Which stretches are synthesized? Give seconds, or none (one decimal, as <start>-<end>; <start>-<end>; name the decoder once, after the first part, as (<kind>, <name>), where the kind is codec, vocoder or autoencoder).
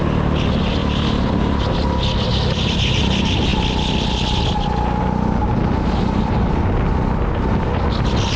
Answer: none